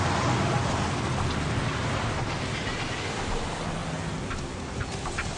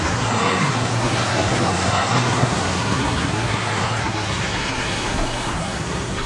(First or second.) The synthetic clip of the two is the second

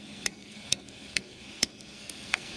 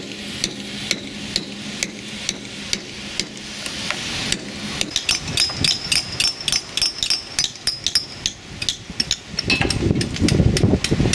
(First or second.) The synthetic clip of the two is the first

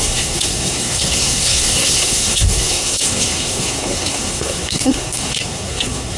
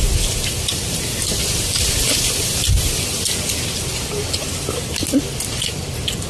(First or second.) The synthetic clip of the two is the first